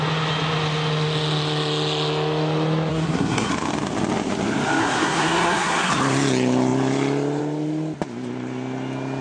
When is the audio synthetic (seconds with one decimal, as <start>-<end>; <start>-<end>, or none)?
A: 2.9-3.5; 4.8-5.9